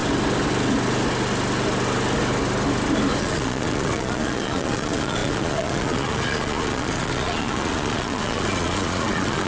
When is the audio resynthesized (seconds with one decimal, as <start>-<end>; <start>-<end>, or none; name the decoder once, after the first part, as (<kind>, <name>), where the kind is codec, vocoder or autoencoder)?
3.2-9.5 (vocoder, Vocos)